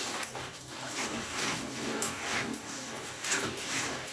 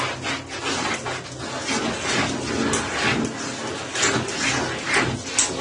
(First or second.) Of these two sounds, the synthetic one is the first